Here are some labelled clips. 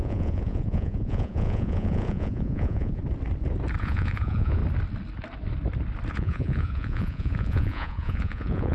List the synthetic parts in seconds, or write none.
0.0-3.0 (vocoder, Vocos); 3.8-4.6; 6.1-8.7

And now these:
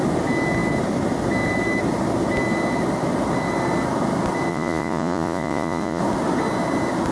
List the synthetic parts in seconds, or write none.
4.5-6.0 (vocoder, Vocos)

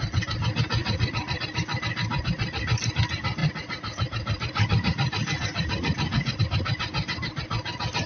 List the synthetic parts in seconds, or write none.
0.8-1.4 (vocoder, Vocos); 3.4-6.4